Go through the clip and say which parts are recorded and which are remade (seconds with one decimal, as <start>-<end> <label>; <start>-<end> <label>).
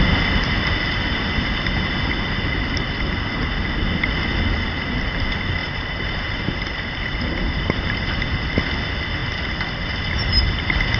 0.0-5.6 recorded; 5.6-8.1 remade; 8.1-11.0 recorded